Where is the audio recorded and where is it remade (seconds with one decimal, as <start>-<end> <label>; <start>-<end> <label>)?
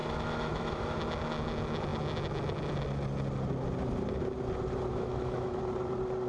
0.0-1.0 remade; 1.0-4.9 recorded; 4.9-5.6 remade; 5.6-6.3 recorded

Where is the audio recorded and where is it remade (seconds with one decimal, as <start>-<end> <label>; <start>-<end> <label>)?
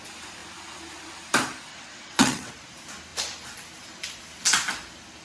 0.0-1.7 recorded; 1.7-2.5 remade; 2.5-5.2 recorded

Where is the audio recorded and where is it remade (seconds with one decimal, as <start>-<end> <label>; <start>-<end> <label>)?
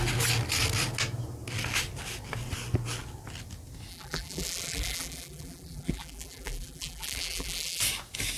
0.0-3.9 recorded; 3.9-7.8 remade; 7.8-8.4 recorded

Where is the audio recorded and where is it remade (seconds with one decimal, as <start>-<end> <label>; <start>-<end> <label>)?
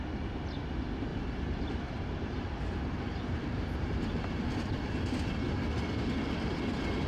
0.0-1.1 recorded; 1.1-5.4 remade; 5.4-7.1 recorded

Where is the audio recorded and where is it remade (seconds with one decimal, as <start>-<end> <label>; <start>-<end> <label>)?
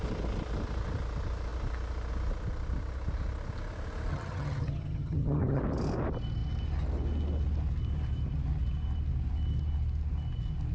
0.0-4.1 recorded; 4.1-5.6 remade; 5.6-10.7 recorded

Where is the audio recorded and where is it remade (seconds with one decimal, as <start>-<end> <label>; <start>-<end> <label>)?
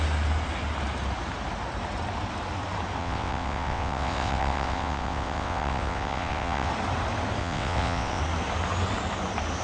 0.0-3.0 recorded; 3.0-6.7 remade; 6.7-7.4 recorded; 7.4-8.2 remade; 8.2-9.6 recorded